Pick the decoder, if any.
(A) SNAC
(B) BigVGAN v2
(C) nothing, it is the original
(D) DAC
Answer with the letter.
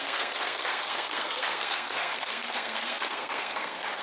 A